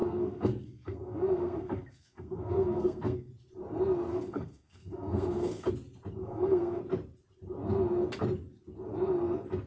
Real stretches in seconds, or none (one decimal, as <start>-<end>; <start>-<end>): 3.3-4.1; 5.7-6.2; 6.8-9.7